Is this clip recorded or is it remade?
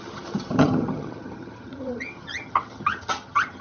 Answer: remade